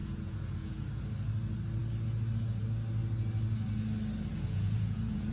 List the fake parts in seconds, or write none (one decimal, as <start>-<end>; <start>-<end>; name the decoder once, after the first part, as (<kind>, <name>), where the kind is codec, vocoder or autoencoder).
0.0-1.0 (vocoder, Vocos); 4.3-5.3